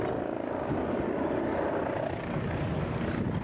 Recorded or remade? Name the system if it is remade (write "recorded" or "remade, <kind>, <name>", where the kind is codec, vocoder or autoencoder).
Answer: recorded